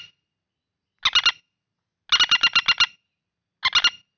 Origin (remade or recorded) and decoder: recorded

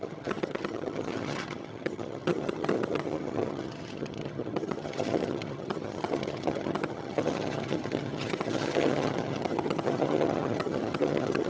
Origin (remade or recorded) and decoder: remade, vocoder, HiFi-GAN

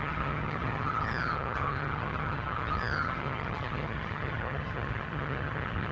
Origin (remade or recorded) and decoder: remade, vocoder, HiFi-GAN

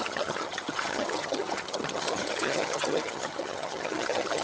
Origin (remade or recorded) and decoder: remade, vocoder, HiFi-GAN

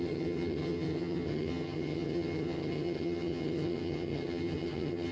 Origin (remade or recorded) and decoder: remade, vocoder, HiFi-GAN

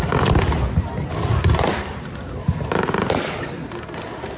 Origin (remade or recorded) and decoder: recorded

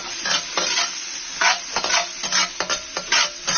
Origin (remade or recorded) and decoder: recorded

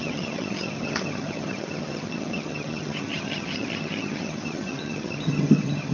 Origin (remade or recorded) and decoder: remade, vocoder, HiFi-GAN